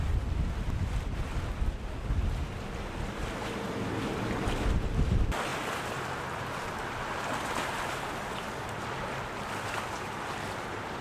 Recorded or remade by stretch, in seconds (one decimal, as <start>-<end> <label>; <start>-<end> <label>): 0.0-11.0 recorded